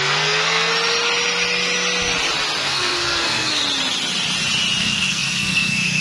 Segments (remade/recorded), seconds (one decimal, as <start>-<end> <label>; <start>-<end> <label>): 0.0-0.7 remade; 0.7-2.6 recorded; 2.6-3.6 remade; 3.6-4.8 recorded; 4.8-6.0 remade